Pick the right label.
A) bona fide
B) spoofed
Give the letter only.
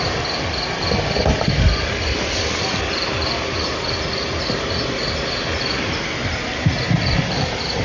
A